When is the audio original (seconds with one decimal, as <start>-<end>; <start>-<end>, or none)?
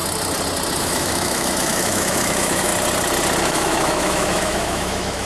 0.0-0.8; 2.7-3.4